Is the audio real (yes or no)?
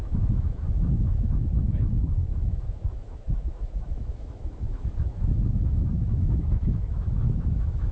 no